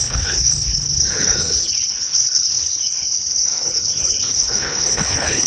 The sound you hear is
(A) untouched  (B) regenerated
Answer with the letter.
B